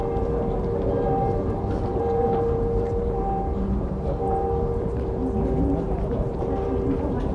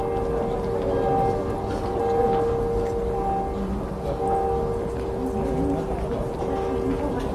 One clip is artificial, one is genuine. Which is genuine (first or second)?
second